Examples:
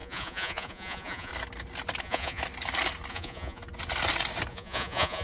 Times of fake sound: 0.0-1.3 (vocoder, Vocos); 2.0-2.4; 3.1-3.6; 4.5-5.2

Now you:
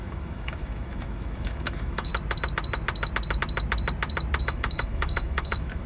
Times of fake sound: 0.0-2.1 (autoencoder, DAC-VAE); 4.4-5.9

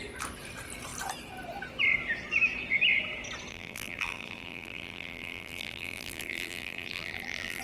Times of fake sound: 3.5-7.6 (vocoder, BigVGAN v2)

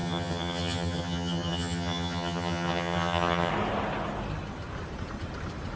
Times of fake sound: 0.0-3.5 (vocoder, HiFi-GAN)

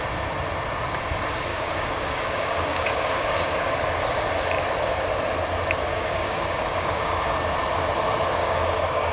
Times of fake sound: 1.5-3.7 (codec, DAC); 5.9-7.3; 8.4-9.1

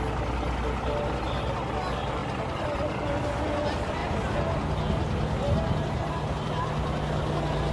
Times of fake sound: none